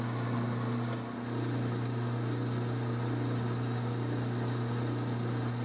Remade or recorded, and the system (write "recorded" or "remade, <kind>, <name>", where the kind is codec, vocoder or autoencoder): recorded